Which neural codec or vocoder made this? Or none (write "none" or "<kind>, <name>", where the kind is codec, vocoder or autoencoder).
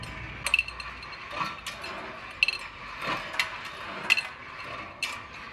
none